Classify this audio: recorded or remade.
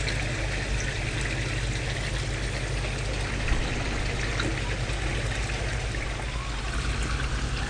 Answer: recorded